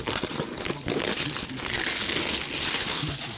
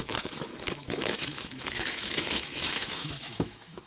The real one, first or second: first